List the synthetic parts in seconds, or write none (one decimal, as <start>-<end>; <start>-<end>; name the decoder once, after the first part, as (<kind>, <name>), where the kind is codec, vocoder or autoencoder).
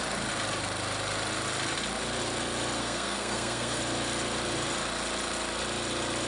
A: 2.8-3.8 (codec, SNAC)